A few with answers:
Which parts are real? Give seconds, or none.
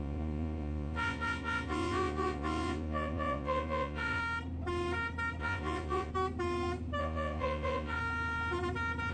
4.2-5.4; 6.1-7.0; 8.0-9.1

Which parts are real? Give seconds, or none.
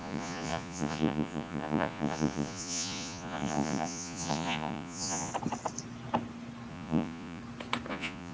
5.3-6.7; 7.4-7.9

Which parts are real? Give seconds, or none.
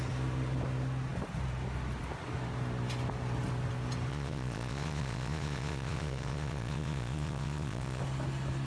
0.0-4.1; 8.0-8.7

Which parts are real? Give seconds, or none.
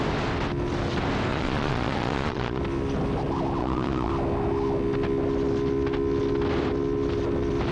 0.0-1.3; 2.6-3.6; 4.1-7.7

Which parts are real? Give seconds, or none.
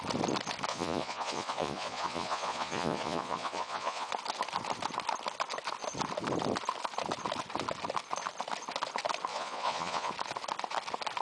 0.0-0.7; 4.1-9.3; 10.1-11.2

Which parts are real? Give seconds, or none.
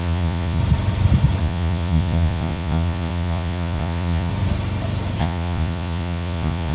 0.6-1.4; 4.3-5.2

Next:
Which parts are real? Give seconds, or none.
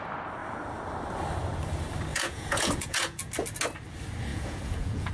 0.0-2.1; 3.3-4.3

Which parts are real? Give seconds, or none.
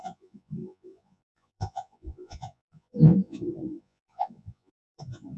none